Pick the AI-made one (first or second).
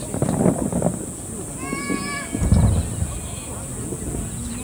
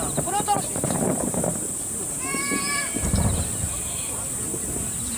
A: second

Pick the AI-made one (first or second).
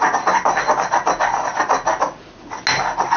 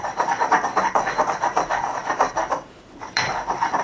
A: second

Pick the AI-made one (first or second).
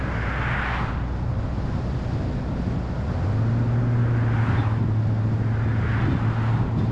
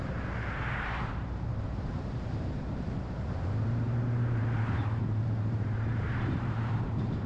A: second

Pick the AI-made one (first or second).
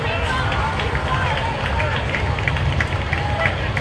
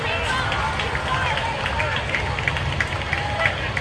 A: first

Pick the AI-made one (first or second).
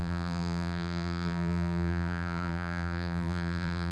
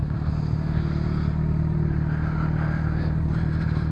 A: first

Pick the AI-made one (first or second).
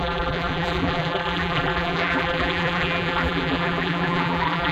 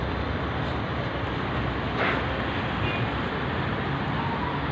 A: first